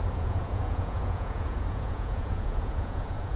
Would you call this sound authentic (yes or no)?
no